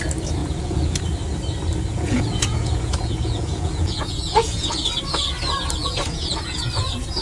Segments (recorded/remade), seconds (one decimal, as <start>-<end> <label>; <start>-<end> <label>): 0.0-0.4 recorded; 0.4-1.0 remade; 1.0-1.9 recorded; 1.9-4.7 remade; 4.7-5.8 recorded; 5.8-6.7 remade; 6.7-7.2 recorded